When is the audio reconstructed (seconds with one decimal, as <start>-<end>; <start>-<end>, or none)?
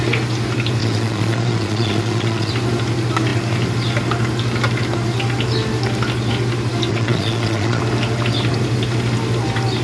0.8-2.5; 6.9-7.8